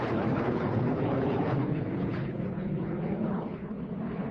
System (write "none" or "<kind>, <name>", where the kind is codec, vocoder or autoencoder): codec, HILCodec